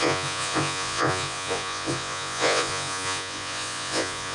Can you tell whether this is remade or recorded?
remade